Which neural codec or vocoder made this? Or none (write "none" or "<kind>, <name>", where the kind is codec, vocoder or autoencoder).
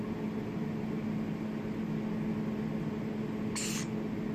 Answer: none